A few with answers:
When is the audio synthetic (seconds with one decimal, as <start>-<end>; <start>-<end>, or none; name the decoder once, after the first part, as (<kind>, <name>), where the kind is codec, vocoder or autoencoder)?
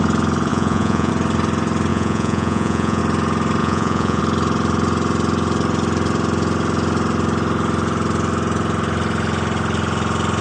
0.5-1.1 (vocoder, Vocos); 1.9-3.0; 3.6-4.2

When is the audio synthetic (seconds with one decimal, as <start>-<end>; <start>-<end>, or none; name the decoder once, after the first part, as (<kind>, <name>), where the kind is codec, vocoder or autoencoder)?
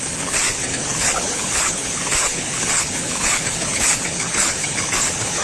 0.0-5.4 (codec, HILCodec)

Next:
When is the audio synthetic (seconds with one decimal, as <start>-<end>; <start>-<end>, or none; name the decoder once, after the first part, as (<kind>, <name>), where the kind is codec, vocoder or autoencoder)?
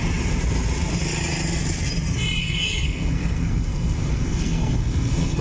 2.4-5.4 (codec, SNAC)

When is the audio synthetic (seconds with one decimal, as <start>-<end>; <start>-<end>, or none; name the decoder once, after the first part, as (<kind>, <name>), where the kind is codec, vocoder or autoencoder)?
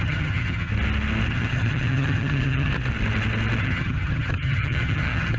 0.0-0.7 (vocoder, HiFi-GAN); 1.3-2.7; 3.6-5.4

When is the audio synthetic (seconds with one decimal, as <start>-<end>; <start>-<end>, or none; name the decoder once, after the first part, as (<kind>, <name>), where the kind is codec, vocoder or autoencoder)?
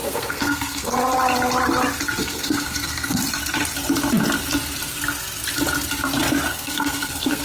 0.0-1.0 (codec, SNAC); 2.2-3.2; 6.5-7.4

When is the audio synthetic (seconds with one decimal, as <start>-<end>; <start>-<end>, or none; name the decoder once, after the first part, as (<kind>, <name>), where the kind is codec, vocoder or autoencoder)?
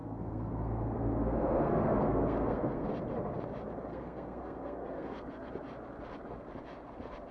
0.0-2.9 (codec, SNAC); 3.9-5.5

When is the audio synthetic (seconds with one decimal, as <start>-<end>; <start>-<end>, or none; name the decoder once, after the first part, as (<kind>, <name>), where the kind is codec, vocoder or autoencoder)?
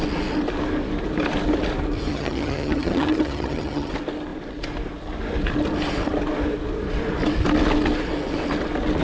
2.1-3.9 (vocoder, HiFi-GAN)